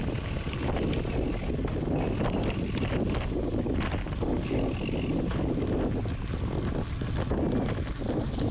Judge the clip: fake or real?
real